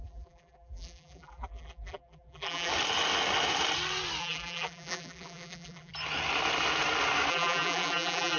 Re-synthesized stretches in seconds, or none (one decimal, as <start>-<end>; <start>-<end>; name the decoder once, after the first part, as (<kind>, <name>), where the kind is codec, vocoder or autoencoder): 0.0-2.7 (vocoder, BigVGAN v2); 4.2-5.9; 7.3-8.4